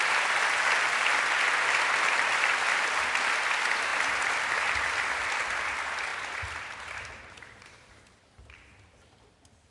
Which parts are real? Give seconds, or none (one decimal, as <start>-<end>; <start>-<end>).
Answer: 0.0-6.1; 7.9-9.7